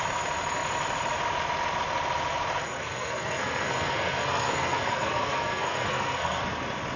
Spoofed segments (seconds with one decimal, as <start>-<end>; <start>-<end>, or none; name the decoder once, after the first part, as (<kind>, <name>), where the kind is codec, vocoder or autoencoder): 2.6-6.4 (codec, SNAC)